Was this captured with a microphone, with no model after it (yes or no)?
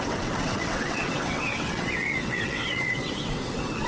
no